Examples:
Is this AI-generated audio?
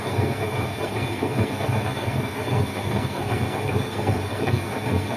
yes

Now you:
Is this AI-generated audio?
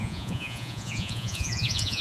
yes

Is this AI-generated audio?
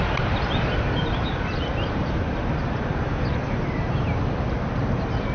no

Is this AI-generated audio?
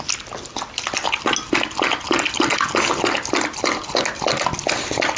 no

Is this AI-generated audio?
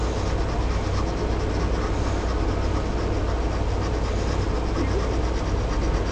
no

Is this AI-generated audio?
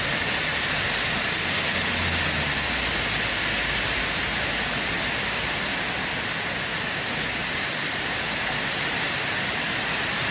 no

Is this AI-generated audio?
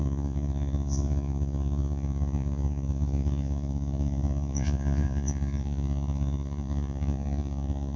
yes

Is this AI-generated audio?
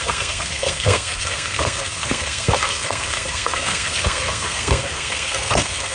yes